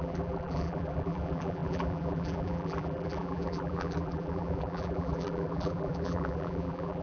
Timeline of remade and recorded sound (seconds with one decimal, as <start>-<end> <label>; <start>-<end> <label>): 0.0-7.0 remade